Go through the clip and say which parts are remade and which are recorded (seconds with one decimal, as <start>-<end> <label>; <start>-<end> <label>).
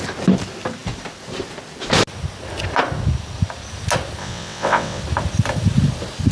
0.0-4.2 recorded; 4.2-5.0 remade; 5.0-6.3 recorded